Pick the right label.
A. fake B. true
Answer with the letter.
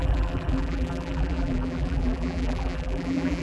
A